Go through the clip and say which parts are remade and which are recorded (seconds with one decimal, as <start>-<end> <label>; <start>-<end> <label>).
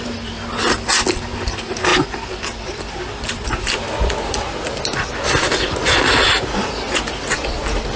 0.0-8.0 recorded